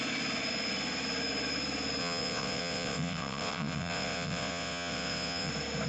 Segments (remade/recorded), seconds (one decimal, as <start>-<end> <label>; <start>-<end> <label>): 0.0-2.0 recorded; 2.0-5.5 remade; 5.5-5.9 recorded

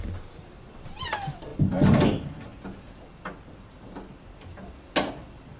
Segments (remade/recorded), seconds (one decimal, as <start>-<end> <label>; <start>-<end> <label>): 0.0-5.6 recorded

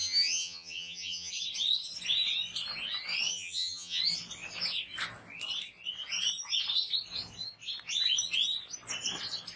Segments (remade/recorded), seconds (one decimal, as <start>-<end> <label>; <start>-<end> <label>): 0.0-1.3 remade; 1.3-3.3 recorded; 3.3-4.0 remade; 4.0-9.6 recorded

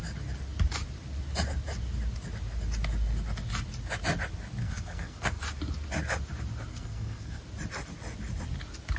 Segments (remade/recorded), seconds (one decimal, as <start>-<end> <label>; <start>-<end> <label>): 0.0-4.6 recorded; 4.6-5.4 remade; 5.4-6.7 recorded; 6.7-7.4 remade; 7.4-9.0 recorded